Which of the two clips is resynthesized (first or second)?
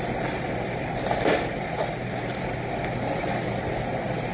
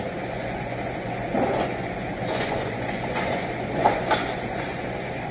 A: second